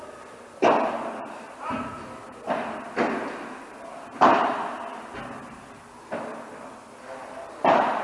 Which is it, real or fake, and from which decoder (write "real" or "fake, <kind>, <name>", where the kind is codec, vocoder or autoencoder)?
real